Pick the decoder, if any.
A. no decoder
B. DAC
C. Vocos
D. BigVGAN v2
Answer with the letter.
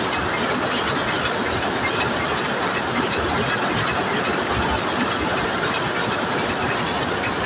A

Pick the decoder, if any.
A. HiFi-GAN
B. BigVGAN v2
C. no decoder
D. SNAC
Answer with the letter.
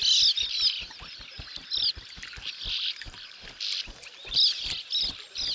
C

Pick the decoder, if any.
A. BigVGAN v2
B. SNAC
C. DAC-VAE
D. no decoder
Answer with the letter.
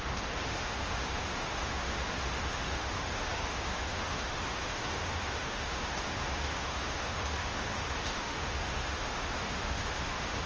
C